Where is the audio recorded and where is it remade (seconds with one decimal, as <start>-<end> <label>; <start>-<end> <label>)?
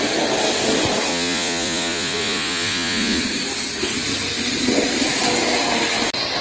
0.0-1.1 recorded; 1.1-3.2 remade; 3.2-6.4 recorded